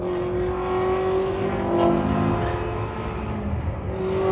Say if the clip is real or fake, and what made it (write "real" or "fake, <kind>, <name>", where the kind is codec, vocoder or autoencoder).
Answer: real